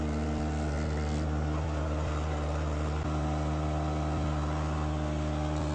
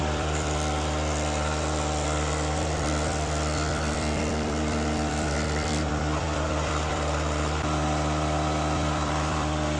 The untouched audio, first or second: first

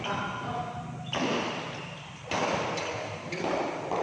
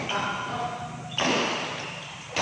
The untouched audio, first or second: second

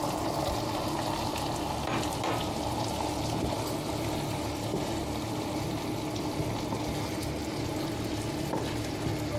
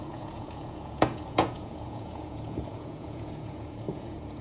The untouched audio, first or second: first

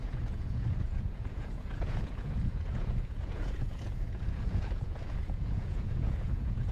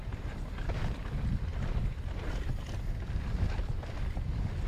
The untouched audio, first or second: second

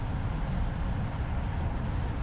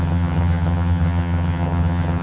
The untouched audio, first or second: first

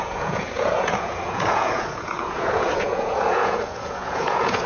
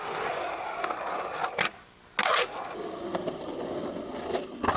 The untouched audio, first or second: second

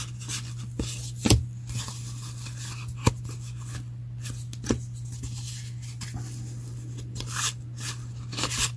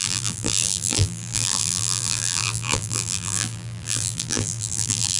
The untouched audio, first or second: first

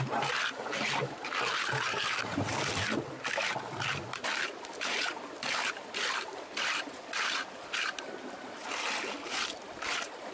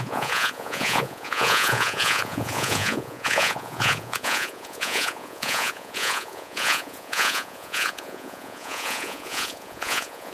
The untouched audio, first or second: first